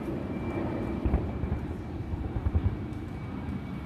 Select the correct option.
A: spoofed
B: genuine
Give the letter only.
A